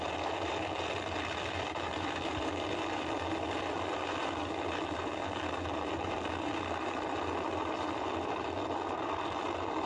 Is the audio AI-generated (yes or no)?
yes